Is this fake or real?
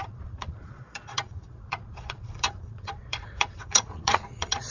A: fake